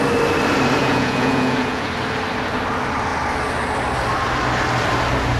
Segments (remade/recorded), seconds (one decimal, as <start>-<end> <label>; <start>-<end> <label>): 0.0-0.8 recorded; 0.8-1.9 remade; 1.9-5.4 recorded